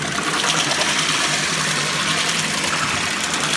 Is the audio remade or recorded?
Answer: remade